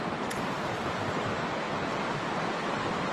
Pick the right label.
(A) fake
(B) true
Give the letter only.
B